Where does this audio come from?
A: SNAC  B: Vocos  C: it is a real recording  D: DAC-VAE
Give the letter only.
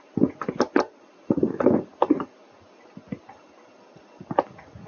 C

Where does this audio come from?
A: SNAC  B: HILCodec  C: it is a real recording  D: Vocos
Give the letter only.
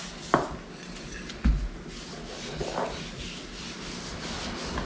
C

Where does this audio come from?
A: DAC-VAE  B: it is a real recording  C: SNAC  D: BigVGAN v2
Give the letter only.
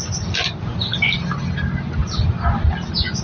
B